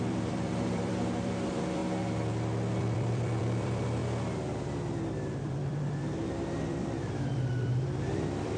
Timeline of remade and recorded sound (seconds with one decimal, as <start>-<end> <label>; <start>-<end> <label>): 0.0-1.8 remade; 1.8-2.8 recorded; 2.8-4.0 remade; 4.0-5.4 recorded; 5.4-8.6 remade